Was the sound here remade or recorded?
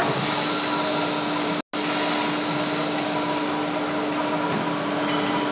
recorded